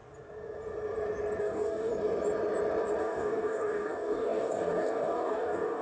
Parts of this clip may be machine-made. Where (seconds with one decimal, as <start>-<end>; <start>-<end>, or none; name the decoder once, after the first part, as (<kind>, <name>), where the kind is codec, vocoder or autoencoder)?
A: 1.4-1.9 (codec, DAC); 3.0-5.8